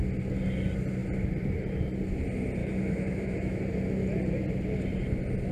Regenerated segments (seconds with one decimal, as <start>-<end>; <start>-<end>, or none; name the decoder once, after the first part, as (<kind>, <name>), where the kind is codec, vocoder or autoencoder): 2.6-3.6 (autoencoder, DAC-VAE)